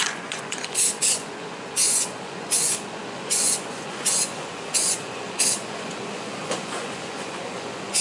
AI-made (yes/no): yes